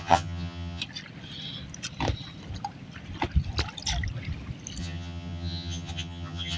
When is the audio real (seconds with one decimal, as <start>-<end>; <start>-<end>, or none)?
0.8-4.8